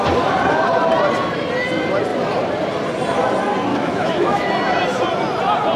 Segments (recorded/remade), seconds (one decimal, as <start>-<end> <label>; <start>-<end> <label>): 0.0-3.7 recorded; 3.7-4.5 remade; 4.5-5.8 recorded